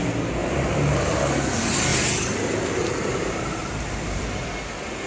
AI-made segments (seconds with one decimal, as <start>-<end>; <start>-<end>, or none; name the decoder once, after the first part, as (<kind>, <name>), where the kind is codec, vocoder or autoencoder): 0.4-1.0 (vocoder, BigVGAN v2); 3.6-4.3